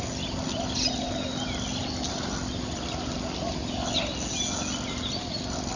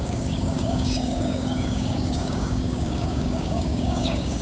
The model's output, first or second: second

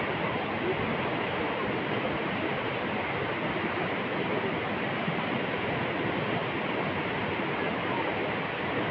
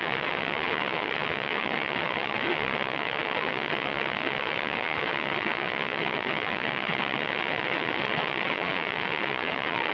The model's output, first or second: second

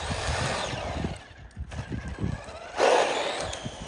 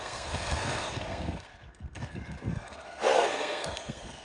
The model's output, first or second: second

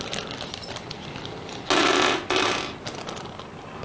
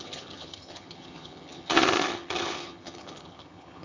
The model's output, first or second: second